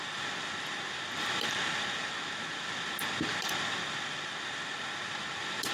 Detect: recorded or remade remade